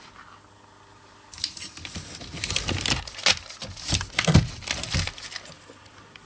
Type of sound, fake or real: real